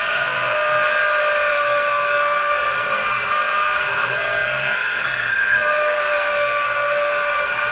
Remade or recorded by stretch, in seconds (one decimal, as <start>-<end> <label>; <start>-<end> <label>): 0.0-1.0 remade; 1.0-1.5 recorded; 1.5-7.7 remade